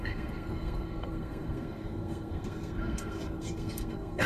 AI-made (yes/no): yes